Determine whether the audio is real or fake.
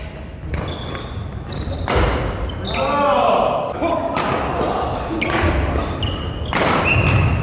real